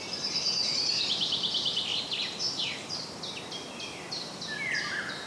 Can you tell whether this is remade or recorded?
recorded